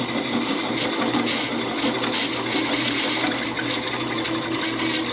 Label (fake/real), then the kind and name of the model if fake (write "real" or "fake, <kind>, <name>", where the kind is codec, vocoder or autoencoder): real